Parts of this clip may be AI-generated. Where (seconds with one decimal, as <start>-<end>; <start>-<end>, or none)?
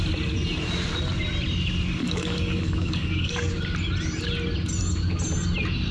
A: 2.0-3.5